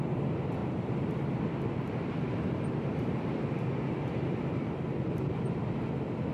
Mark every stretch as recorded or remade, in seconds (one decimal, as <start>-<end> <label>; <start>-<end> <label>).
0.0-0.6 recorded; 0.6-4.4 remade; 4.4-6.3 recorded